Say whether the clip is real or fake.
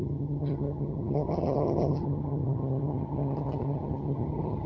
fake